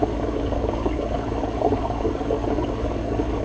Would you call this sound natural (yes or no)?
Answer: no